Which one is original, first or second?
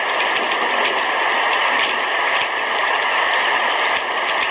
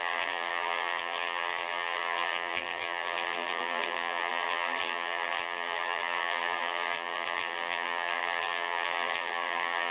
first